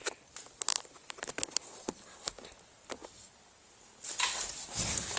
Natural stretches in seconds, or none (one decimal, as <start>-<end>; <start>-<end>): 0.0-5.2